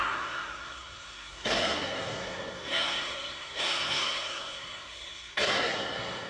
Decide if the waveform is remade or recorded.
remade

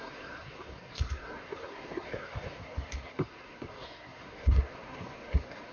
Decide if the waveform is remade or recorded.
remade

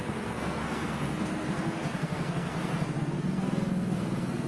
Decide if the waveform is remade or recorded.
remade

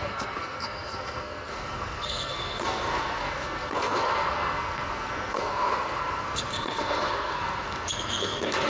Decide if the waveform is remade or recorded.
remade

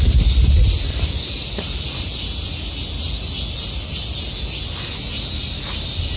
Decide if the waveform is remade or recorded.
recorded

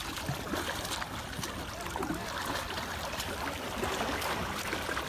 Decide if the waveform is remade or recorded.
recorded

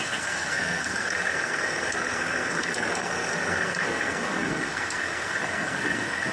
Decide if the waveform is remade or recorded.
remade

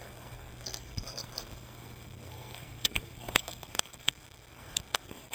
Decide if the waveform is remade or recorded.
remade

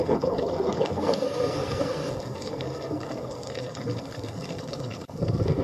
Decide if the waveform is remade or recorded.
remade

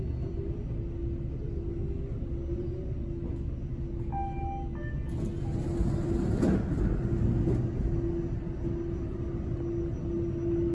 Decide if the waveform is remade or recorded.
recorded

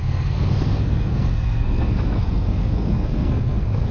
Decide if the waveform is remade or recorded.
remade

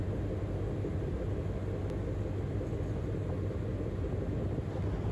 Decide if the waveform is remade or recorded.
recorded